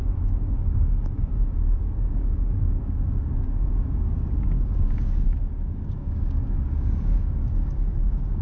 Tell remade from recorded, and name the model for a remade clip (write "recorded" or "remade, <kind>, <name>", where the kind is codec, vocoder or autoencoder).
remade, codec, DAC